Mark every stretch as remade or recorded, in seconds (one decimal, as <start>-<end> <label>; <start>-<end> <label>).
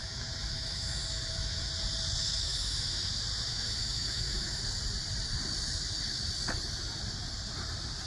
0.0-1.7 remade; 1.7-2.2 recorded; 2.2-3.1 remade; 3.1-3.5 recorded; 3.5-4.6 remade; 4.6-8.1 recorded